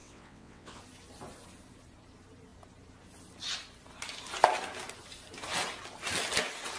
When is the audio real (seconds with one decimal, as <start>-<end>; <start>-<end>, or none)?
0.8-6.8